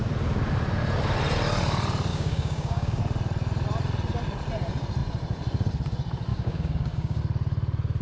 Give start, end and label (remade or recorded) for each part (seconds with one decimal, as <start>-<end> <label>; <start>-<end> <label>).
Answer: 0.0-2.1 recorded; 2.1-3.0 remade; 3.0-6.3 recorded; 6.3-7.2 remade; 7.2-8.0 recorded